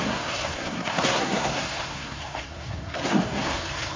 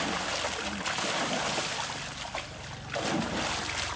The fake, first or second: first